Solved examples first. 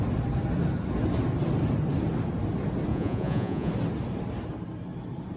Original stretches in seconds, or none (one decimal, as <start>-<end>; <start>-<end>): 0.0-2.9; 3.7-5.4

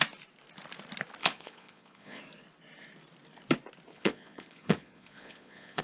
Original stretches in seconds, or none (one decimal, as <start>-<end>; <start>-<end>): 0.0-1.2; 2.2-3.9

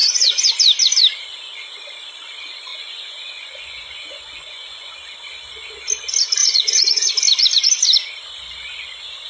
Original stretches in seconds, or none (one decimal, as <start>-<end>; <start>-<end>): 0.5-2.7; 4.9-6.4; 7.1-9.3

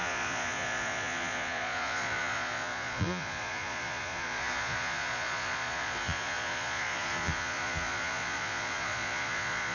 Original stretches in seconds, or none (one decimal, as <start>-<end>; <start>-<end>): none

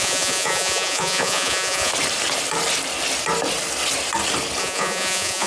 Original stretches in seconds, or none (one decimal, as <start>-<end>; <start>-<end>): 1.9-4.6